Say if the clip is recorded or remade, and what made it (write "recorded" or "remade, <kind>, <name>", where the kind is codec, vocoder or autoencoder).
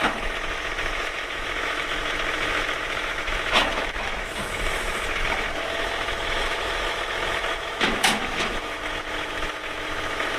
remade, autoencoder, DAC-VAE